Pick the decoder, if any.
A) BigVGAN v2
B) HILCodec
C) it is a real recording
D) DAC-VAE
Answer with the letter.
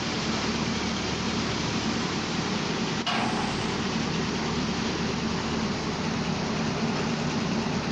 C